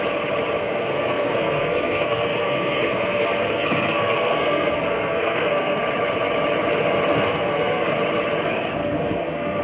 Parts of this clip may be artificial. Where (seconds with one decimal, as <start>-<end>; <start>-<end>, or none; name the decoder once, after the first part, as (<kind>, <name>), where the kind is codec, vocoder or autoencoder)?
0.6-5.8 (codec, SNAC); 7.1-7.9; 8.8-9.6